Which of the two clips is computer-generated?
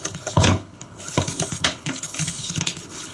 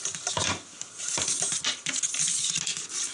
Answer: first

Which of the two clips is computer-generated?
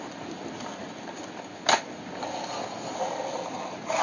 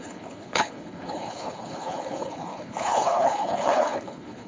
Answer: second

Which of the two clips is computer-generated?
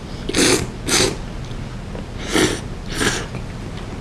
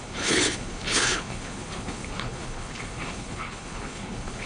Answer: second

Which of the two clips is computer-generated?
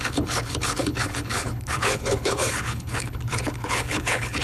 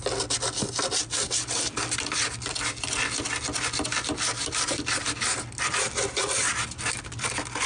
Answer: first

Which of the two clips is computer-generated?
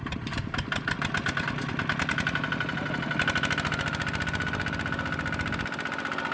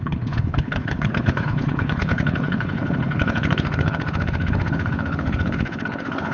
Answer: second